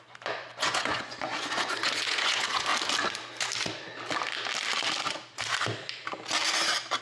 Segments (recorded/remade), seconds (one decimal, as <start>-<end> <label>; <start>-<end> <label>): 0.0-2.7 remade; 2.7-7.0 recorded